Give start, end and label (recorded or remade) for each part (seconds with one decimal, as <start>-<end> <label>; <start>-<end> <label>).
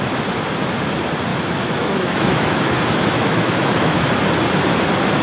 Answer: 0.0-1.3 recorded; 1.3-4.1 remade; 4.1-5.2 recorded